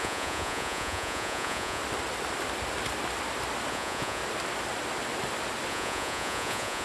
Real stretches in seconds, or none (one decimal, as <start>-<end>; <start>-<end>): 1.8-3.7; 4.2-5.7